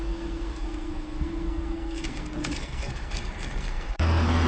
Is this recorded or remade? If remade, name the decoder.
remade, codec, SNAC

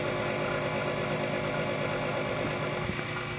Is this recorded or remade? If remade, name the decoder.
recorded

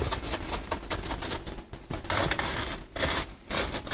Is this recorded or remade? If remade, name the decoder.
recorded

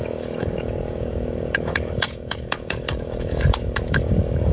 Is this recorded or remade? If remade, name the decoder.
remade, codec, DAC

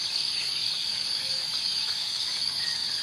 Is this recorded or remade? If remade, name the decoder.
remade, codec, DAC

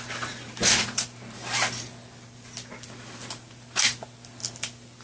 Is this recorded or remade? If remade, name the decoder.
recorded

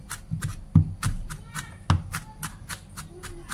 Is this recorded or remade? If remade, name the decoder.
recorded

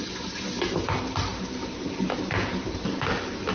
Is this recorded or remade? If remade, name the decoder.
recorded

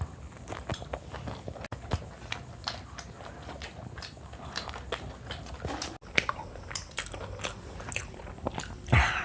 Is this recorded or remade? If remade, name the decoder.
recorded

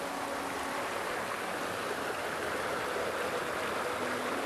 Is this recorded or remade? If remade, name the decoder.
recorded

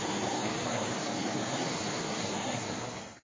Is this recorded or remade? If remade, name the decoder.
remade, codec, SNAC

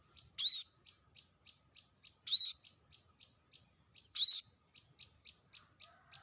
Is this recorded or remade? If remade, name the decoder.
recorded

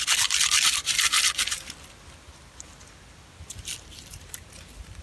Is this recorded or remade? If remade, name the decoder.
recorded